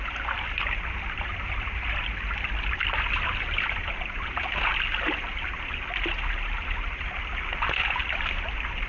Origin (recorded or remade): recorded